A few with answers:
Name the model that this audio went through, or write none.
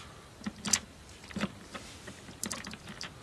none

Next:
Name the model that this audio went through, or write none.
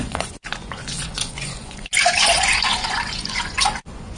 vocoder, Vocos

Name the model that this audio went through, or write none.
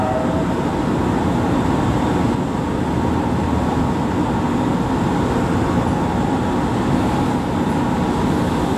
none